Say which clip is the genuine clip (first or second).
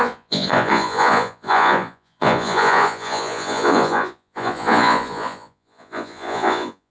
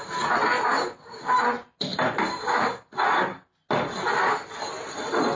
second